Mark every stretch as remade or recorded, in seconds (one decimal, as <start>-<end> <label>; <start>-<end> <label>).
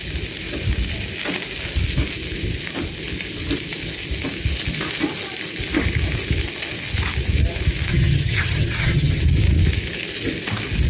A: 0.0-7.9 recorded; 7.9-9.2 remade; 9.2-10.9 recorded